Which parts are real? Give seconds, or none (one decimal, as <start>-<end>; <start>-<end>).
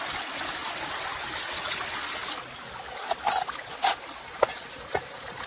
0.0-5.5